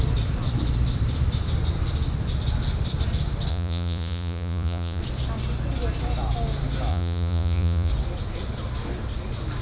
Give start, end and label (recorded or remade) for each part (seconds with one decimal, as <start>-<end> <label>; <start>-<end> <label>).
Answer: 0.0-3.5 recorded; 3.5-5.0 remade; 5.0-6.9 recorded; 6.9-7.9 remade; 7.9-9.6 recorded